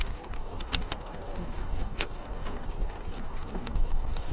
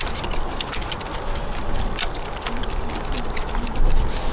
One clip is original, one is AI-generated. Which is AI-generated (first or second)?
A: first